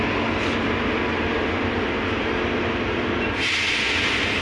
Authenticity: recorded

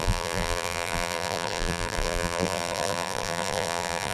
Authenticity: remade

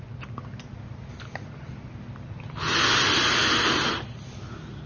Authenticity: recorded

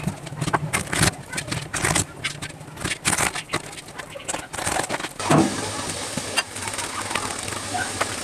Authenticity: recorded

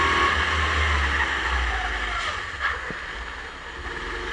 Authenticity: recorded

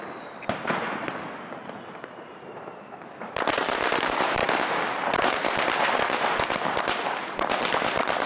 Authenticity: remade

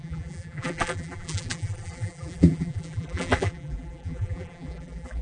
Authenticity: remade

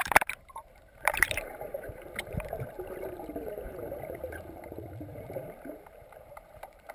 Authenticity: remade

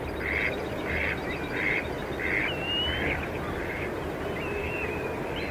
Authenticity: remade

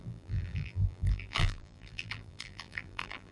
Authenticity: remade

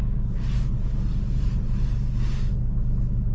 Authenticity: remade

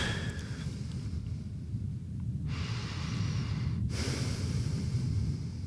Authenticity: recorded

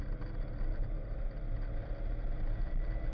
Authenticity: recorded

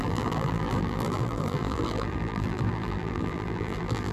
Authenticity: remade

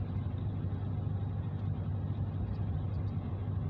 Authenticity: recorded